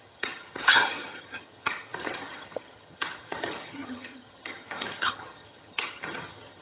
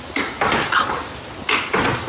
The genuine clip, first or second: second